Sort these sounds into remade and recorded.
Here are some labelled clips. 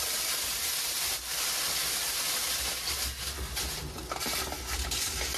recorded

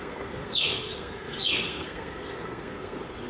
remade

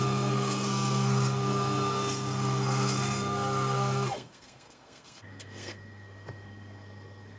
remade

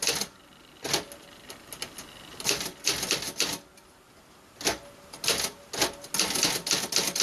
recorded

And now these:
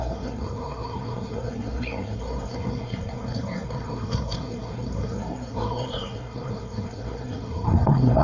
remade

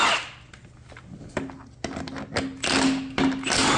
recorded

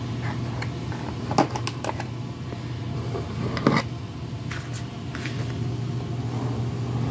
recorded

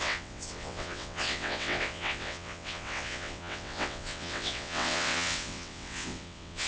remade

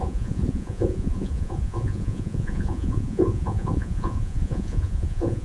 remade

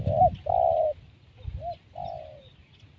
recorded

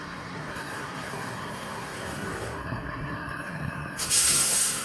remade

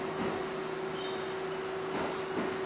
recorded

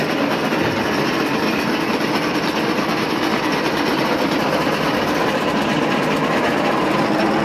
recorded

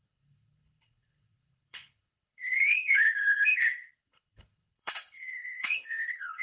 remade